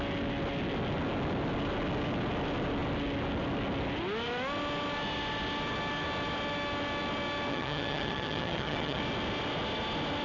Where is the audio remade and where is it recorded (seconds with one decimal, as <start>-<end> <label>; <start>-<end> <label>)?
0.0-7.5 recorded; 7.5-9.0 remade; 9.0-10.2 recorded